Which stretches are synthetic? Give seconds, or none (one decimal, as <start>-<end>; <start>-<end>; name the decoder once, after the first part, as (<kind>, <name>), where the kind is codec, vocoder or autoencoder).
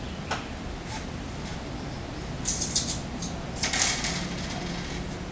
none